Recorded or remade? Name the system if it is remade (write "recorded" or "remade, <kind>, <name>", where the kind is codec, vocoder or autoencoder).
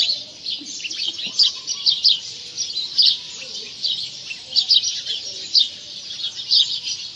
recorded